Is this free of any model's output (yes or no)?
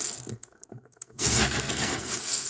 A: no